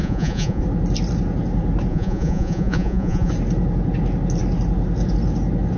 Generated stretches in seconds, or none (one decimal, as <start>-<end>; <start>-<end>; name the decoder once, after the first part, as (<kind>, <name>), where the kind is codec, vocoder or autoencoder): 0.0-0.6 (vocoder, Vocos); 1.9-3.3